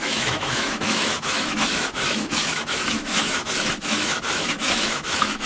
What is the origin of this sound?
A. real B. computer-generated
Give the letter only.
B